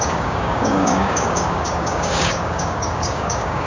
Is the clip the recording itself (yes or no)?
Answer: no